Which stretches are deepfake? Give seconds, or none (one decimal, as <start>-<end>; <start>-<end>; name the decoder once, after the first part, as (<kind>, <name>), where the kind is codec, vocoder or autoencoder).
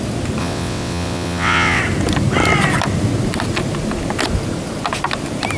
0.4-1.8 (vocoder, WaveNeXt)